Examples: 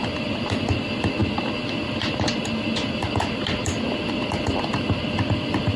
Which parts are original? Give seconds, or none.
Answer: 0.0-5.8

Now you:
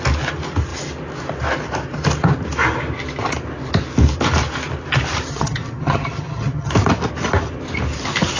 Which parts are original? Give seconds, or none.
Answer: 0.0-5.3; 6.7-8.4

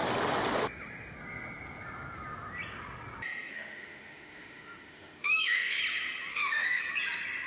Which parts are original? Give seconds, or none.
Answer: 0.0-3.5; 5.8-6.3; 6.8-7.5

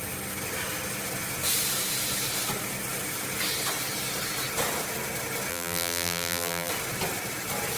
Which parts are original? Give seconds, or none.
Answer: 0.0-5.5; 6.7-7.8

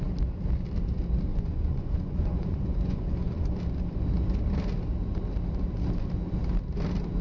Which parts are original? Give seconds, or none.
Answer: 0.0-1.3; 3.6-7.2

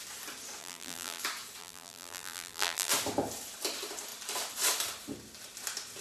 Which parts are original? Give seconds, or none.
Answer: 0.0-0.6; 1.2-1.6; 2.9-6.0

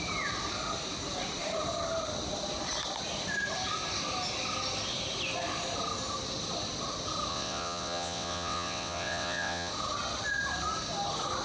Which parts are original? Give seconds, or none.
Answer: 0.0-7.3; 9.7-11.4